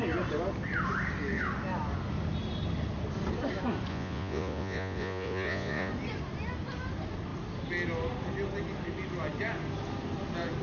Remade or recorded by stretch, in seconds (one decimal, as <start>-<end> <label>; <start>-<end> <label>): 0.0-3.9 recorded; 3.9-5.9 remade; 5.9-10.6 recorded